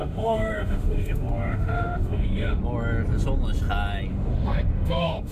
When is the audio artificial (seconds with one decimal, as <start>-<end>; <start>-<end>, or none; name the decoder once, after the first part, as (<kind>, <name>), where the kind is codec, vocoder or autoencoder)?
0.0-2.6 (autoencoder, DAC-VAE); 4.1-5.3

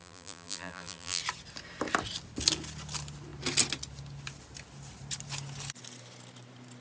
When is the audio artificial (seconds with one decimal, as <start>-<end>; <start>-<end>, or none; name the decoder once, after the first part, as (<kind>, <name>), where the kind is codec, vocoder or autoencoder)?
0.0-1.2 (vocoder, BigVGAN v2)

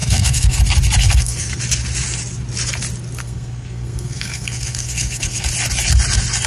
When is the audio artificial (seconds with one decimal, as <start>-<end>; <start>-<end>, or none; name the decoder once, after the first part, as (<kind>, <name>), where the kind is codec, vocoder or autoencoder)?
0.0-0.6 (codec, SNAC); 1.0-1.6; 3.2-5.5

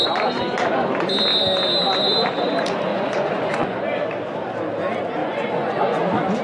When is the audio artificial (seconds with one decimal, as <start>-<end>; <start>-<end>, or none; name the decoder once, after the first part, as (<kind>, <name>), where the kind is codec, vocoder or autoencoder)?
2.9-3.8 (vocoder, Vocos); 5.2-6.0

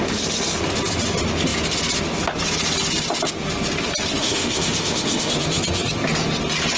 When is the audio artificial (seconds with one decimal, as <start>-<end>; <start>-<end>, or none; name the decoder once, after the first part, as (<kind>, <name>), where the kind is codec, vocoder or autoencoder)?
4.2-5.3 (autoencoder, DAC-VAE)